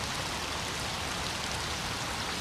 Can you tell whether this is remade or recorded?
recorded